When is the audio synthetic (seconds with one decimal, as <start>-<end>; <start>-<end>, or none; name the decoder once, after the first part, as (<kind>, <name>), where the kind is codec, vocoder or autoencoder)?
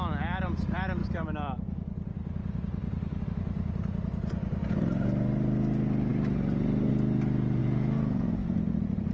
7.6-8.6 (vocoder, Vocos)